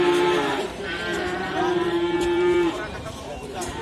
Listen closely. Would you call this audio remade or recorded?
remade